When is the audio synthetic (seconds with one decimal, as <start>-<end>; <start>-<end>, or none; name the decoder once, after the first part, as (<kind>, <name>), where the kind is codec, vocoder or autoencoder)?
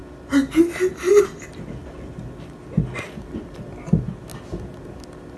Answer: none